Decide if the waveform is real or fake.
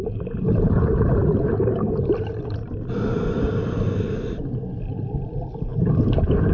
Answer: real